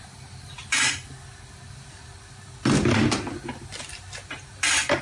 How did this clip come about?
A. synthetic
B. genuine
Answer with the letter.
B